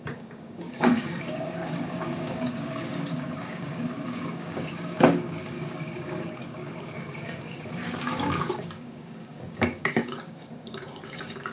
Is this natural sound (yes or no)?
no